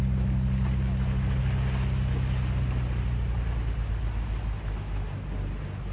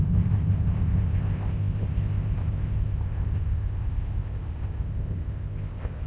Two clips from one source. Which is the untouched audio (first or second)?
first